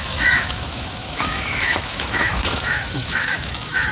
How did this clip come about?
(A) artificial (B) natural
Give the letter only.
A